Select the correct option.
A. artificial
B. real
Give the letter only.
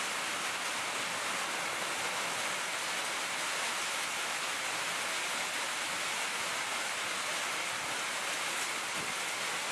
B